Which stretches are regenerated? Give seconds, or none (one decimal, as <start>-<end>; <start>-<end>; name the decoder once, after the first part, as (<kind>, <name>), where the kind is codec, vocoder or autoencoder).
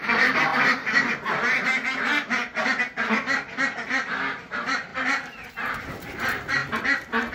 0.0-0.5 (vocoder, BigVGAN v2); 4.5-4.9; 5.5-6.6